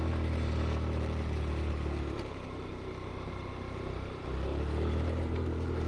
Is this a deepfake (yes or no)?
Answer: yes